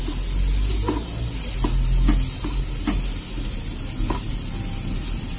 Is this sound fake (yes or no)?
no